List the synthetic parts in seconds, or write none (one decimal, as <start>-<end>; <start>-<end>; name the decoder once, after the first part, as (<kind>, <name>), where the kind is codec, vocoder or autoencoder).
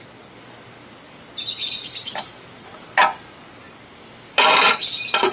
2.0-3.7 (vocoder, BigVGAN v2); 4.3-5.3